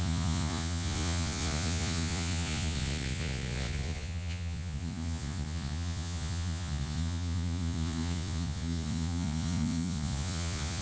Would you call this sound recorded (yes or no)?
no